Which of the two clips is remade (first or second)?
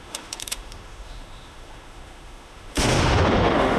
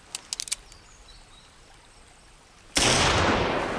first